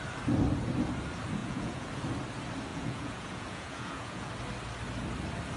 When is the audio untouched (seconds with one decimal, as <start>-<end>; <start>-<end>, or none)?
0.0-1.4; 1.9-2.7; 4.3-5.6